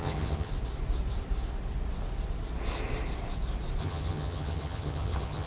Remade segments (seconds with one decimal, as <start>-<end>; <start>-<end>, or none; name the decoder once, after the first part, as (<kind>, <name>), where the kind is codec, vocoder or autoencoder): 0.0-0.5 (vocoder, HiFi-GAN); 3.8-5.5